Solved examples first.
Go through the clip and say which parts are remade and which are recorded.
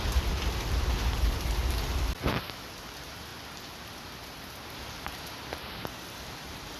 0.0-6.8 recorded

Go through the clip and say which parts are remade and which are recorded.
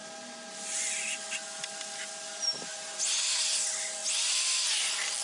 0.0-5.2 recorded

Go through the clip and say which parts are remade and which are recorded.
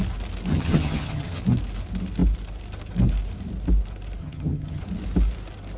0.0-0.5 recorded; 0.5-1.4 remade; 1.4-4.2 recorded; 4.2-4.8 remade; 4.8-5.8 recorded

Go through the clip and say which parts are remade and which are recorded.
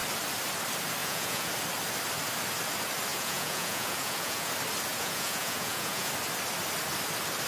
0.0-1.0 recorded; 1.0-1.5 remade; 1.5-3.1 recorded; 3.1-4.5 remade; 4.5-4.9 recorded; 4.9-6.1 remade; 6.1-7.5 recorded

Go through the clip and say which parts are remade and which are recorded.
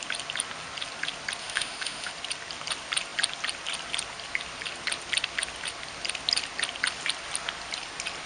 0.0-1.4 recorded; 1.4-2.1 remade; 2.1-8.3 recorded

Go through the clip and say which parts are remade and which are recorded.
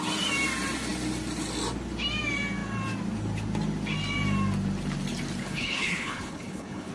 0.0-5.4 recorded; 5.4-6.9 remade